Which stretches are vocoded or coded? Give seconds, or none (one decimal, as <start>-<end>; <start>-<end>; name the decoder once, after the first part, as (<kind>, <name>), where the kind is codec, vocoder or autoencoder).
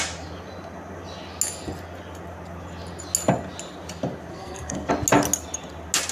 4.3-4.9 (codec, SNAC)